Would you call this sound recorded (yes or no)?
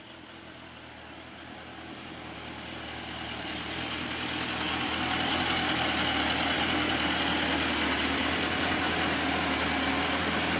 yes